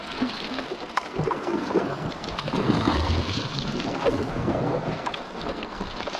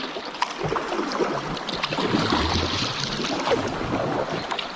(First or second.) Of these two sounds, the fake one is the first